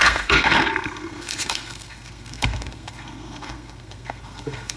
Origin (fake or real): fake